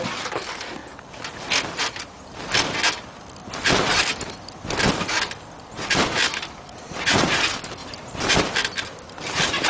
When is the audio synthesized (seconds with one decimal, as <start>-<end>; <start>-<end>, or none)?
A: none